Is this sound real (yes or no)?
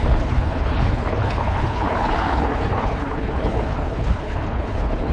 no